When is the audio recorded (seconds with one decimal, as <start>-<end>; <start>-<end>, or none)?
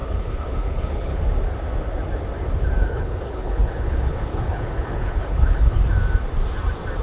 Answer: 1.2-2.8; 5.8-7.0